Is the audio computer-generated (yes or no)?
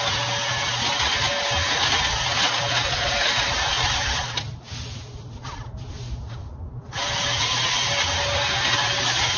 no